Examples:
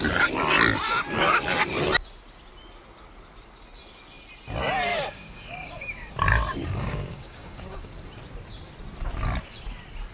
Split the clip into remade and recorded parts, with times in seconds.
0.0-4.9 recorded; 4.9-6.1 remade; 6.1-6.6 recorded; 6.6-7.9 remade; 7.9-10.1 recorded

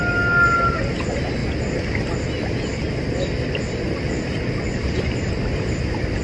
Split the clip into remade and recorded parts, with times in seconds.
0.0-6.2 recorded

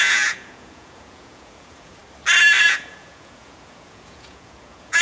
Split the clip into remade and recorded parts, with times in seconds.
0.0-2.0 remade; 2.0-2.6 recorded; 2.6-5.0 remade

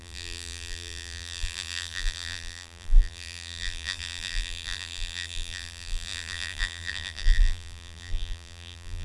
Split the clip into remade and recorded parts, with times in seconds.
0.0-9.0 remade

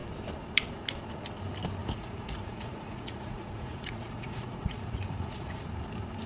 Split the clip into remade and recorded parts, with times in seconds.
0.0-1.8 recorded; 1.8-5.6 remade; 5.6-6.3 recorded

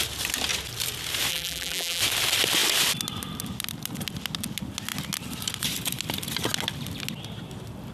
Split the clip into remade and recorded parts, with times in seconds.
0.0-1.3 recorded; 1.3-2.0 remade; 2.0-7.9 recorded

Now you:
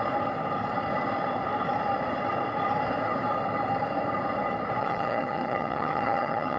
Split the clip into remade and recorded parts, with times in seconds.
0.0-4.8 recorded; 4.8-6.6 remade